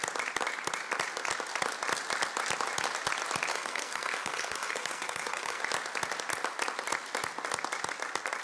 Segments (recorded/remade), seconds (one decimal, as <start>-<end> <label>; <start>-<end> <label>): 0.0-3.5 recorded; 3.5-5.6 remade; 5.6-8.4 recorded